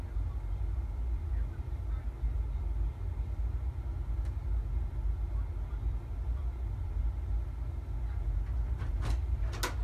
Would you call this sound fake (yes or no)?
no